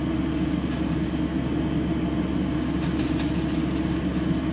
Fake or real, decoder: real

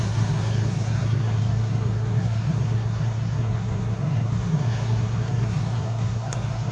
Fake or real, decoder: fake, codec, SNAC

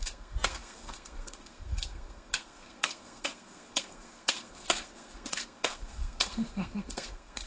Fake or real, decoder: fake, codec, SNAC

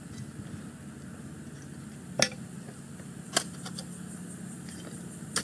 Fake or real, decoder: real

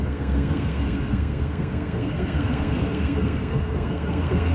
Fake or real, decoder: fake, codec, SNAC